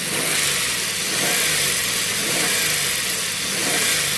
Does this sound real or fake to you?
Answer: real